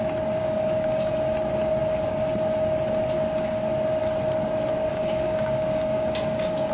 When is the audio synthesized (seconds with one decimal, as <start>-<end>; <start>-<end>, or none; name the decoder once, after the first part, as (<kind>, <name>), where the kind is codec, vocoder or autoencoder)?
0.4-1.1 (codec, DAC); 4.9-6.7